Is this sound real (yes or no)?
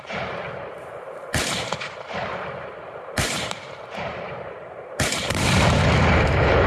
no